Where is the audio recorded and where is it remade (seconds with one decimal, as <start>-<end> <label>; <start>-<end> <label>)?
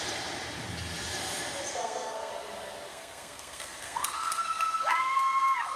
0.0-1.7 recorded; 1.7-2.3 remade; 2.3-2.9 recorded; 2.9-5.8 remade